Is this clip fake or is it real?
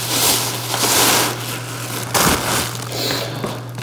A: real